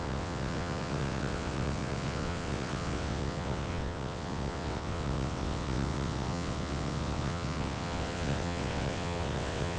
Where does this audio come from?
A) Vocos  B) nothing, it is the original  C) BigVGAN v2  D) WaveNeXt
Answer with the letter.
D